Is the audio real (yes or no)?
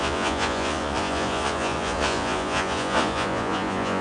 no